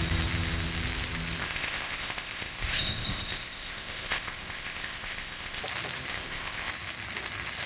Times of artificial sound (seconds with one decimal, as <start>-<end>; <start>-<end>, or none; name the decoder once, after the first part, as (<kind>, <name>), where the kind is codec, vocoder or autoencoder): 1.4-5.6 (codec, ZipCodec); 6.1-6.7